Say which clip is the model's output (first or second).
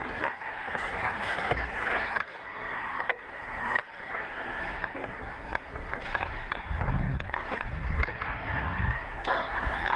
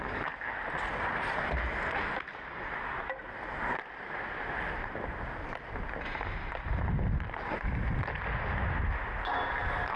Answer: first